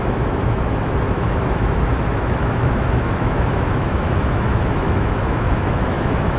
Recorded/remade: remade